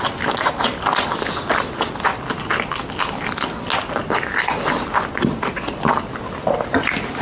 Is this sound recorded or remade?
recorded